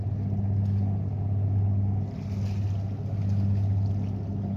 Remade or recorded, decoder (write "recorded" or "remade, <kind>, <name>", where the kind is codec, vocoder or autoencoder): recorded